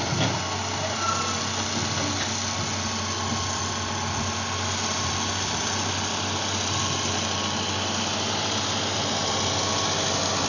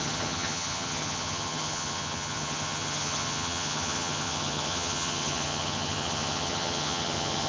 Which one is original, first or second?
first